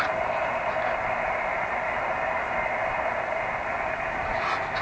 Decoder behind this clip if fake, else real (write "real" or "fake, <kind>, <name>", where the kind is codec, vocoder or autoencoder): real